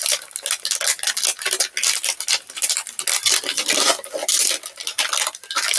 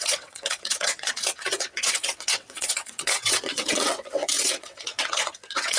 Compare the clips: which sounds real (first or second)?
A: first